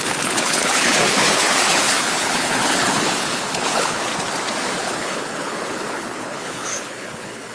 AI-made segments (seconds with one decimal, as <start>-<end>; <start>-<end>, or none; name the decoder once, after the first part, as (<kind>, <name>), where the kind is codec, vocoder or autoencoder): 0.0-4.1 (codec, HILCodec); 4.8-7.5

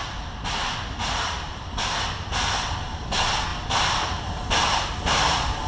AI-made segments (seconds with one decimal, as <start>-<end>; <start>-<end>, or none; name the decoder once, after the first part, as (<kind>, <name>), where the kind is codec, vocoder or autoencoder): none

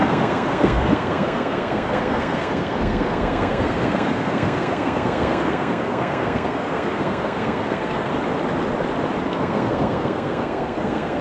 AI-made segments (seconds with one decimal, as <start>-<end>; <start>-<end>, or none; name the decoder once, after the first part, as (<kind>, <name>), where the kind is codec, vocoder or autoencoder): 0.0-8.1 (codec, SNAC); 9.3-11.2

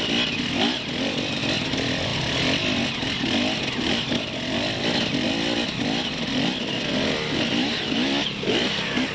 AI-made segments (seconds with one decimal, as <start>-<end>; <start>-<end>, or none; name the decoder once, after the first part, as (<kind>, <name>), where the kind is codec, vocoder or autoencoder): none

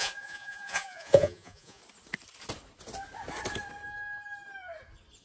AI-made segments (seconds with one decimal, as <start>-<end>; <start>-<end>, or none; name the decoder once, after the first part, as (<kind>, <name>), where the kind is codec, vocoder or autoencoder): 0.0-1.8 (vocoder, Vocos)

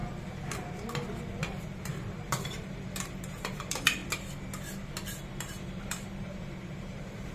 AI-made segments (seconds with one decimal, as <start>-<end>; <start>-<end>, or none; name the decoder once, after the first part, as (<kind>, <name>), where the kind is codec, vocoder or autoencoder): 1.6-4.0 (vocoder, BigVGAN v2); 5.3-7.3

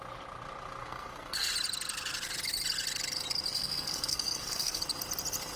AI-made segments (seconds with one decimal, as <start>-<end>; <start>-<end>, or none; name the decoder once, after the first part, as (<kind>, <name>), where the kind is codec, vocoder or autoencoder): 0.8-1.5 (codec, SNAC); 3.5-4.8